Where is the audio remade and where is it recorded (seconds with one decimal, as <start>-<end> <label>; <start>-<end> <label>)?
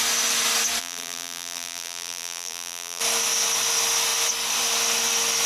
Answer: 0.0-0.8 recorded; 0.8-3.0 remade; 3.0-5.5 recorded